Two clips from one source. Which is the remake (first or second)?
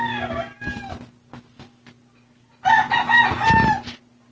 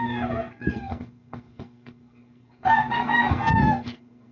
second